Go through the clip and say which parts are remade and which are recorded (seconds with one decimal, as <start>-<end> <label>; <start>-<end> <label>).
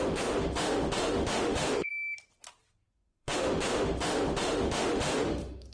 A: 0.0-1.9 remade; 1.9-2.9 recorded; 2.9-5.7 remade